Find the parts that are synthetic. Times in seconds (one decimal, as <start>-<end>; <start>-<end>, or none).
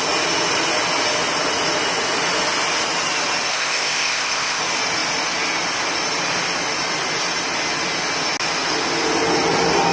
3.5-4.6